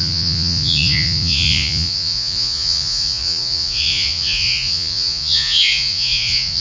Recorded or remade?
remade